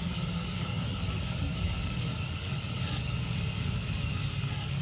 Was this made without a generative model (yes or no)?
no